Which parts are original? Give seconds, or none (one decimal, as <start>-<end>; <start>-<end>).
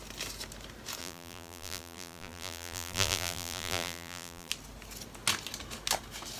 0.0-1.0; 4.5-6.4